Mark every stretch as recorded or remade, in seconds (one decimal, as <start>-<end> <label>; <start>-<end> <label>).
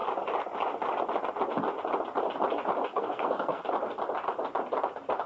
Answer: 0.0-2.9 recorded; 2.9-3.6 remade; 3.6-5.3 recorded